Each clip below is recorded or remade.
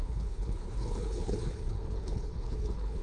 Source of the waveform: remade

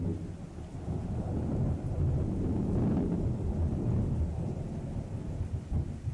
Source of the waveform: recorded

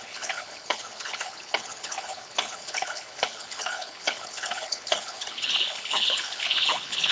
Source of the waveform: remade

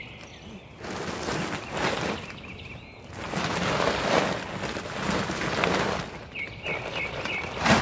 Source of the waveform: recorded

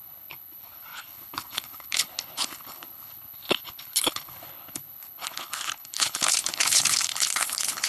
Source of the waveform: remade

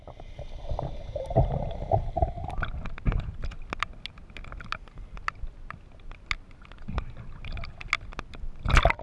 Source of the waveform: recorded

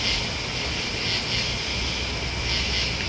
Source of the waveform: recorded